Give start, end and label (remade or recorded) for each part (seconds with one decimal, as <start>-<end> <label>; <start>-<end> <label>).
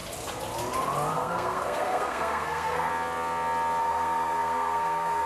0.0-1.1 recorded; 1.1-2.9 remade; 2.9-3.8 recorded; 3.8-5.3 remade